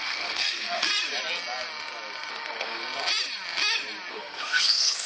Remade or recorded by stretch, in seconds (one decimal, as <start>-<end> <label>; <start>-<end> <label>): 0.0-0.9 remade; 0.9-2.3 recorded; 2.3-2.8 remade; 2.8-4.1 recorded; 4.1-5.1 remade